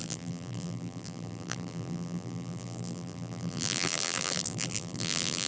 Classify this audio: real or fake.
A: fake